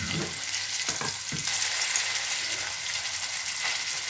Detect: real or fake real